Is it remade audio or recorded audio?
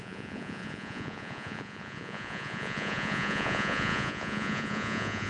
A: remade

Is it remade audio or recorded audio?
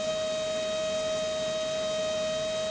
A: recorded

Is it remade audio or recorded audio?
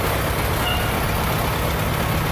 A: recorded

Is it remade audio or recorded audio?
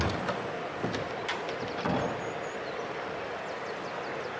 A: recorded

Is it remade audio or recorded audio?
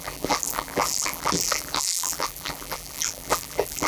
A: remade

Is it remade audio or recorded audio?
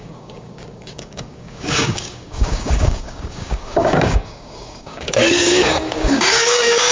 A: remade